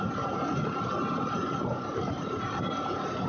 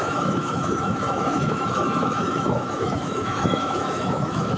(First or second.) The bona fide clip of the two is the first